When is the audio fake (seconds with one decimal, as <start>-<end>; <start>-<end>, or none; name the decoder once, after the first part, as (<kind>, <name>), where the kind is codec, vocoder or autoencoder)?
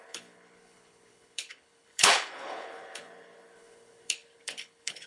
0.0-5.1 (codec, HILCodec)